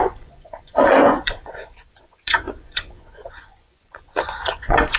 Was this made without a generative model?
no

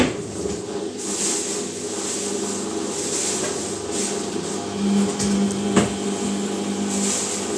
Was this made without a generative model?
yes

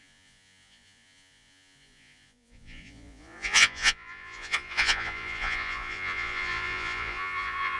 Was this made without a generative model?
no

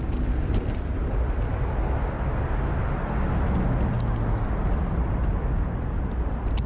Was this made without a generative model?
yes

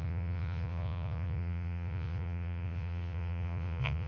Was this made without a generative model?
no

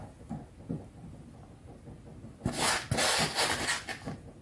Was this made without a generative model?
yes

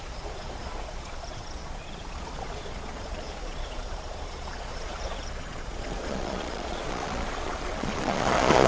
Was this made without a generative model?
no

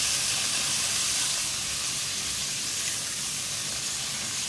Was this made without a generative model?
yes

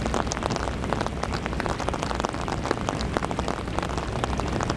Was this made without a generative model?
yes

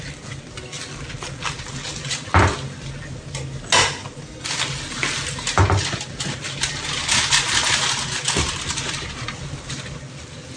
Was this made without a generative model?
yes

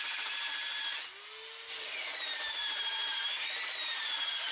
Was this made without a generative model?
yes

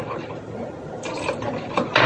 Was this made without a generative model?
yes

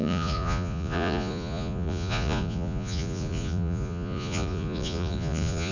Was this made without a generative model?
no